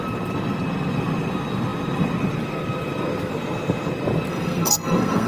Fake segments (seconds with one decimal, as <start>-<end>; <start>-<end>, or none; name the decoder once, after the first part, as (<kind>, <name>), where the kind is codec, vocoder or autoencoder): 4.3-5.3 (codec, SNAC)